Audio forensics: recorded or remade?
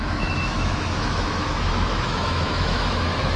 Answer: remade